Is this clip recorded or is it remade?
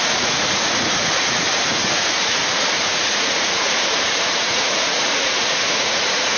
remade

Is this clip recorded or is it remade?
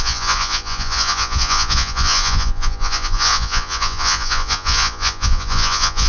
remade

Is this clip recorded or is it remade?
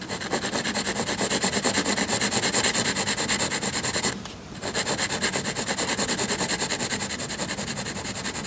recorded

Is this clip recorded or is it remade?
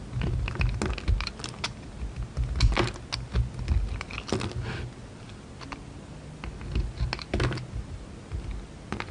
recorded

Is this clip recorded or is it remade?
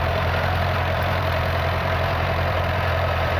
remade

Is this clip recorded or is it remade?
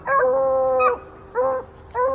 recorded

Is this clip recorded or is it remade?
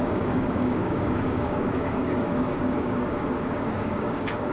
remade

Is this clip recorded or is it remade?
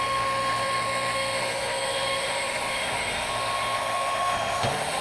remade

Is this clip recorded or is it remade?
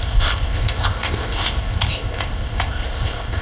remade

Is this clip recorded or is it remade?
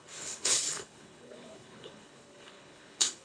remade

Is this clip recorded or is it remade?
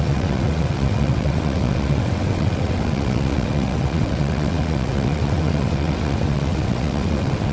remade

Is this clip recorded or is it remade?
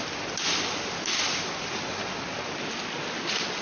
recorded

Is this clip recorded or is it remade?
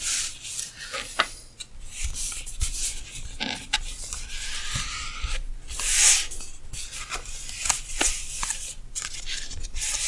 recorded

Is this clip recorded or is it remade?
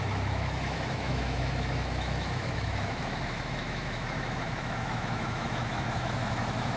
remade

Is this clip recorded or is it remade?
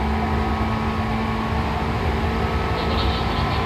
recorded